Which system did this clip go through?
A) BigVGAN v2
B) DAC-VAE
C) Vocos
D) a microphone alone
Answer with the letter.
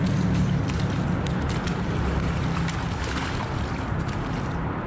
A